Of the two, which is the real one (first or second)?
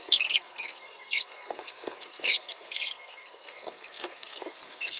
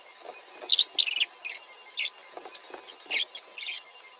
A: second